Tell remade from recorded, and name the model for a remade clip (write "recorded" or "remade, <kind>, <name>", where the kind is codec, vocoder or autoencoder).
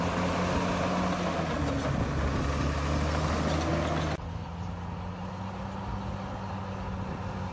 recorded